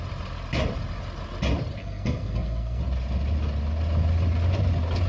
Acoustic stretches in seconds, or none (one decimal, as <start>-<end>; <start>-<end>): 0.0-1.8; 2.8-5.1